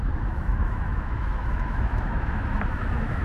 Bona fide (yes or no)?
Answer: no